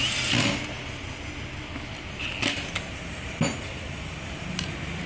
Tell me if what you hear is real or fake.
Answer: real